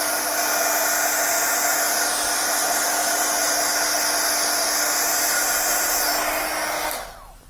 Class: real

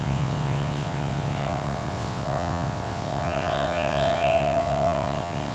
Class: fake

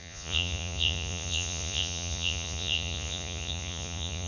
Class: fake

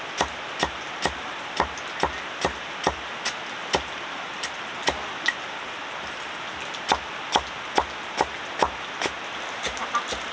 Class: real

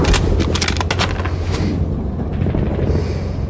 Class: real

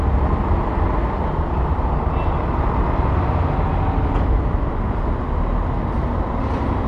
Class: real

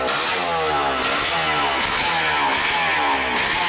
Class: real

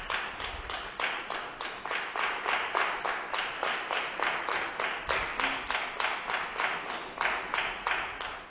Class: real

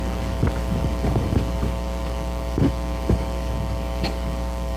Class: fake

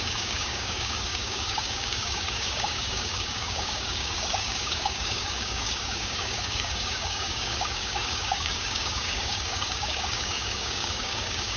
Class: fake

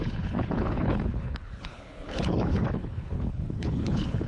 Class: fake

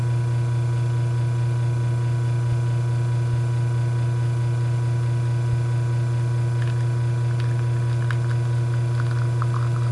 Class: real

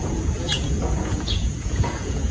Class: fake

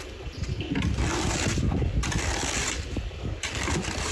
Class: real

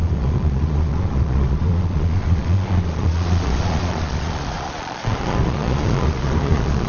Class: fake